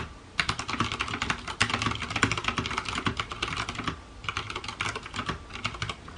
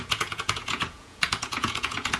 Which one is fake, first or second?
second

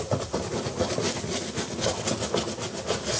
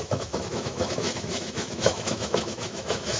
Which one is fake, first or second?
second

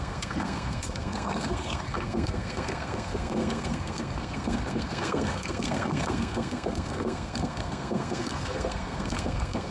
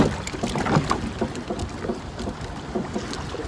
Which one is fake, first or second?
first